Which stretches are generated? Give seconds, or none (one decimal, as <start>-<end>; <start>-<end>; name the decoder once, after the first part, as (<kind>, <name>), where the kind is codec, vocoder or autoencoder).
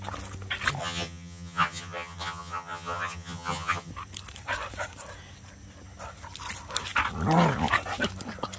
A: 0.8-3.9 (vocoder, HiFi-GAN)